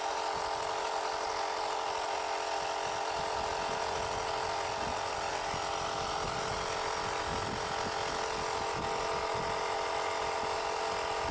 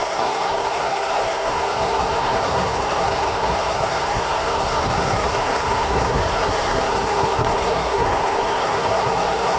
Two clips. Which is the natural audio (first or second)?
first